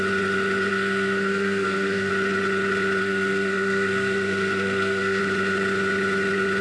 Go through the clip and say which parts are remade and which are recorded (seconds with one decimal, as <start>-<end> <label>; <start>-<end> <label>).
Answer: 0.0-0.7 recorded; 0.7-2.1 remade; 2.1-3.0 recorded; 3.0-5.2 remade; 5.2-6.6 recorded